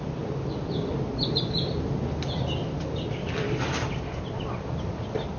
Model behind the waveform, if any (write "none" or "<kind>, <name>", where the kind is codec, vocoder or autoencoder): none